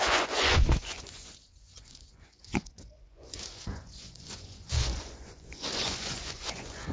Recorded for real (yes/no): no